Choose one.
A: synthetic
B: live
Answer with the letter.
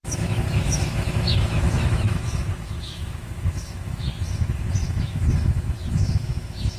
A